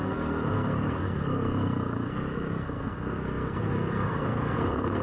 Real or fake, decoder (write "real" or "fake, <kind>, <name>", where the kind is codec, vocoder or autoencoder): fake, codec, SNAC